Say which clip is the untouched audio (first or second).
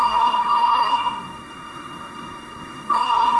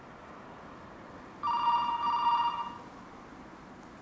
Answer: second